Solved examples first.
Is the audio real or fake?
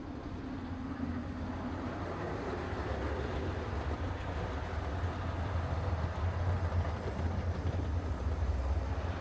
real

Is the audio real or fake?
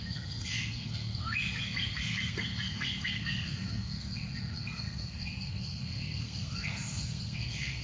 fake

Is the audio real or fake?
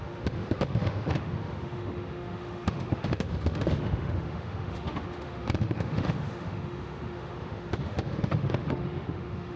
fake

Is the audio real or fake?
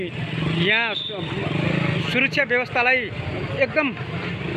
real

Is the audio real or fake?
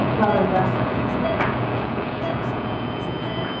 fake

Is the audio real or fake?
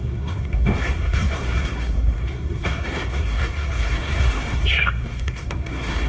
fake